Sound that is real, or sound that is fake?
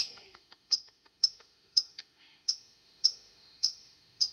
fake